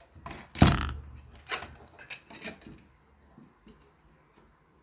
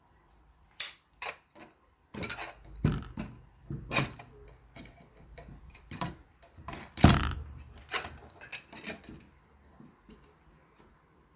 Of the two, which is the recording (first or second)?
first